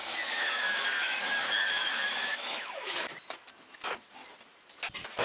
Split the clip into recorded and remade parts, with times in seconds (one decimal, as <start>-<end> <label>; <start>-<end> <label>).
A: 0.0-3.1 remade; 3.1-5.2 recorded